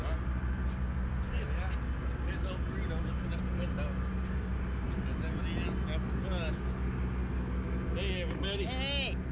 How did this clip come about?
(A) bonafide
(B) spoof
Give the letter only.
A